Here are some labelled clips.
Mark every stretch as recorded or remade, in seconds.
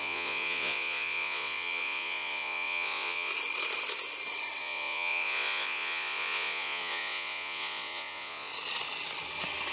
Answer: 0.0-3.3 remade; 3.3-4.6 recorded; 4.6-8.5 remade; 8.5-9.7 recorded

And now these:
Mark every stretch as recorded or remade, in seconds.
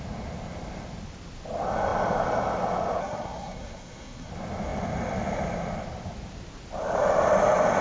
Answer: 0.0-3.0 recorded; 3.0-4.3 remade; 4.3-7.8 recorded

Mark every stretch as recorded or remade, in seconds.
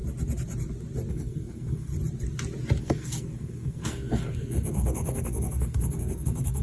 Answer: 0.0-1.1 recorded; 1.1-1.9 remade; 1.9-2.8 recorded; 2.8-6.6 remade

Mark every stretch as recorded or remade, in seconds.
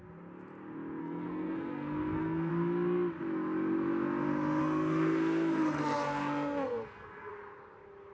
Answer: 0.0-1.0 recorded; 1.0-2.5 remade; 2.5-4.6 recorded; 4.6-7.3 remade; 7.3-8.1 recorded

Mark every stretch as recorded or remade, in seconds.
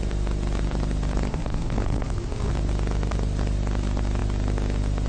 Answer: 0.0-1.3 recorded; 1.3-2.5 remade; 2.5-5.1 recorded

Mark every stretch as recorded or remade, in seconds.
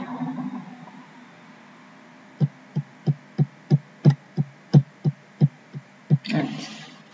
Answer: 0.0-4.7 recorded; 4.7-6.4 remade; 6.4-7.1 recorded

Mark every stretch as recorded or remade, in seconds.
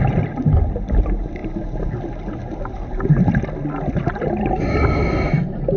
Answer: 0.0-5.8 recorded